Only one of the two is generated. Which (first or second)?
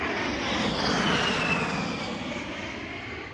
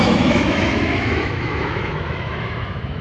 second